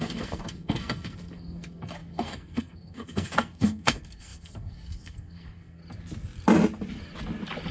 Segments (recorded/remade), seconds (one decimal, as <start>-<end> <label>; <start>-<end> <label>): 0.0-5.8 remade; 5.8-7.7 recorded